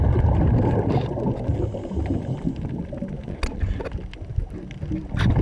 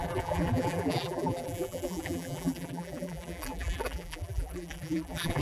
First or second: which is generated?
second